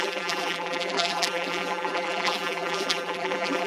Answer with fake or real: fake